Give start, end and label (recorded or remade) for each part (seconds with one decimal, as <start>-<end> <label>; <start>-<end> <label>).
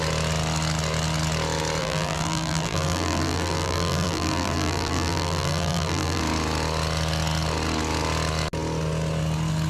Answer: 0.0-1.8 recorded; 1.8-6.2 remade; 6.2-9.7 recorded